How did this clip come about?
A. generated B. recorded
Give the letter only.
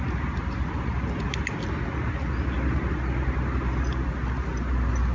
B